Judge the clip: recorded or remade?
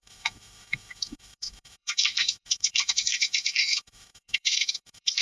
remade